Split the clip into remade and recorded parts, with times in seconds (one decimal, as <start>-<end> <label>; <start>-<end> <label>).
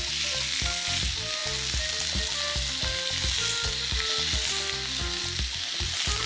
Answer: 0.0-6.3 recorded